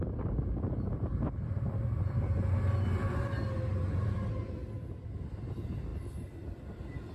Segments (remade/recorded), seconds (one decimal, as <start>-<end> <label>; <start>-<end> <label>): 0.0-7.1 recorded